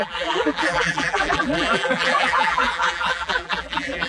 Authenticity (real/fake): fake